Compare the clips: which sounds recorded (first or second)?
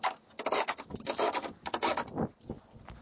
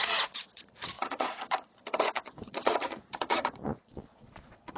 first